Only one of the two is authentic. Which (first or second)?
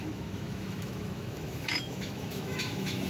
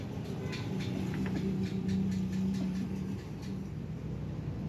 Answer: second